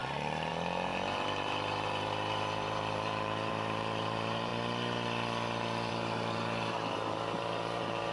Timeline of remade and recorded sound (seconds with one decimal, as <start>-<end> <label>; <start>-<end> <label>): 0.0-4.5 remade; 4.5-5.9 recorded; 5.9-8.1 remade